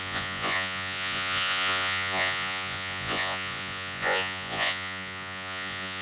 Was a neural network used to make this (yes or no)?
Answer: yes